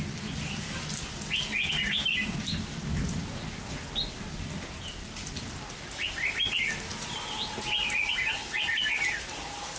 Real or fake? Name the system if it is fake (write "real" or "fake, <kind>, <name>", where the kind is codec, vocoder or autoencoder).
real